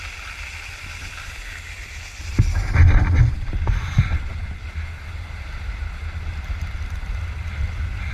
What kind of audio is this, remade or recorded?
recorded